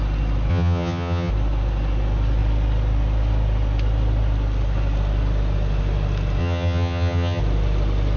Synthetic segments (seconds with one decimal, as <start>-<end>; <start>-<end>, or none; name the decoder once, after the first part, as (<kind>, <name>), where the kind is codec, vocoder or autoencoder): 0.5-1.3 (vocoder, HiFi-GAN); 6.4-7.4